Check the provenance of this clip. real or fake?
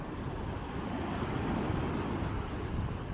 real